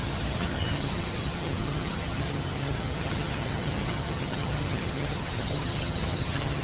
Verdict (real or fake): fake